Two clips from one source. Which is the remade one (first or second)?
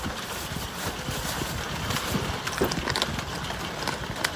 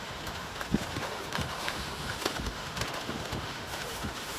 second